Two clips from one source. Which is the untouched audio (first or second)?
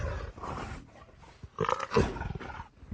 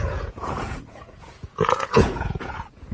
first